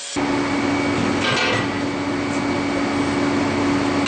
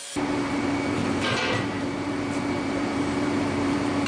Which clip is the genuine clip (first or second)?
first